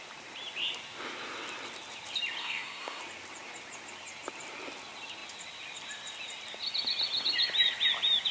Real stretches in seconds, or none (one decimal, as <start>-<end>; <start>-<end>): 0.0-2.4; 3.0-8.3